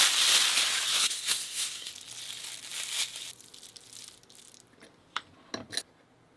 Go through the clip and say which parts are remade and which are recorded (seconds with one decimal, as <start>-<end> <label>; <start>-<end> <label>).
0.0-0.9 recorded; 0.9-1.9 remade; 1.9-6.4 recorded